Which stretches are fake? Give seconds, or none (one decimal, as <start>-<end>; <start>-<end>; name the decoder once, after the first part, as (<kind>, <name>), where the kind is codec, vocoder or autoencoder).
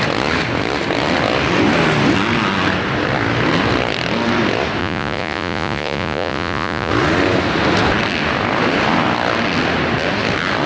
4.8-6.9 (vocoder, Vocos)